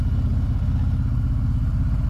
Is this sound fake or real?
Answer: real